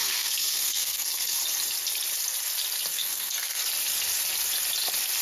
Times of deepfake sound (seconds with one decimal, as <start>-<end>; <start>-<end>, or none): 0.0-1.4; 2.9-3.6